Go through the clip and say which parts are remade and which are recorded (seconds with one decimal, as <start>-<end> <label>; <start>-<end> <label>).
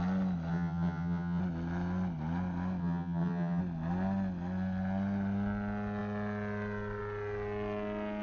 0.0-0.5 recorded; 0.5-1.4 remade; 1.4-2.8 recorded; 2.8-3.6 remade; 3.6-8.2 recorded